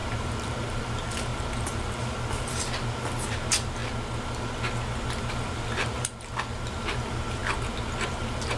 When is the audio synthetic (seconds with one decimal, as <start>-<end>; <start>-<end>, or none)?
0.0-3.8; 5.3-7.4; 8.1-8.6